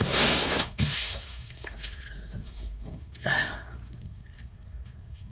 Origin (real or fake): fake